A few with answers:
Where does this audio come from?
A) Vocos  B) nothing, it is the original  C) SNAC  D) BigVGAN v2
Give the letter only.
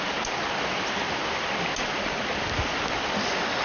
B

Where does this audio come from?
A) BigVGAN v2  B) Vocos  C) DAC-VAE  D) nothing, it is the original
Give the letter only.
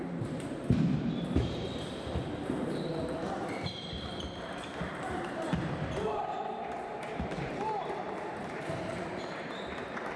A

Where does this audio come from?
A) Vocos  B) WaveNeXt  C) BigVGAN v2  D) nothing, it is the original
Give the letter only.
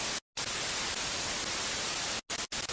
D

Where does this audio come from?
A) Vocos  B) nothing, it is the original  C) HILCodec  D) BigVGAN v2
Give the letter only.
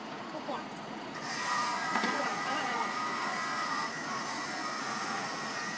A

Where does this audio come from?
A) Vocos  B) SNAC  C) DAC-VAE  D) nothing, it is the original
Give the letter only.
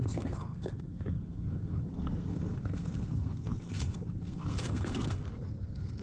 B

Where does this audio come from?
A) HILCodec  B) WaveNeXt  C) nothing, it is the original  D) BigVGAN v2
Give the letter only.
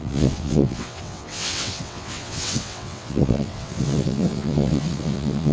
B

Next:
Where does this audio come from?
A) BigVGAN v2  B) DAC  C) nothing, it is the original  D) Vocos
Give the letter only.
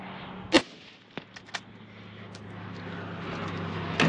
C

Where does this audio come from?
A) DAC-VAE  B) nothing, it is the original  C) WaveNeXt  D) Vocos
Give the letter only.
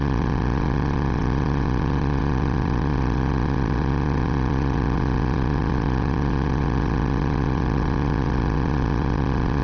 C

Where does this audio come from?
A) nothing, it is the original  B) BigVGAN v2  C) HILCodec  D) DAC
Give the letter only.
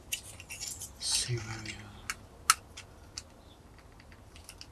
A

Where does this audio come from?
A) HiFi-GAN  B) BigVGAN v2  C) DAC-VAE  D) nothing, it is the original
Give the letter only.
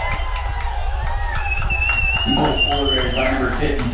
D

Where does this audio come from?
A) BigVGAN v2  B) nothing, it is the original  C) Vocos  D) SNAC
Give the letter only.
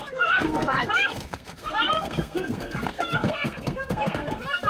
D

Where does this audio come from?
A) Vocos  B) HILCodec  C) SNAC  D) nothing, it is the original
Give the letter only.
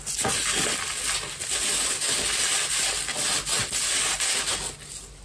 D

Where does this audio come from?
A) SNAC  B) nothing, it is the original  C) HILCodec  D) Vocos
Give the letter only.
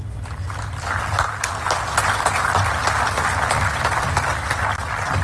B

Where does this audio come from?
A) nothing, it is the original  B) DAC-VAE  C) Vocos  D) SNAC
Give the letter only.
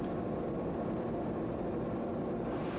A